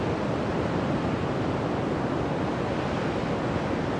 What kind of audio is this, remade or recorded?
recorded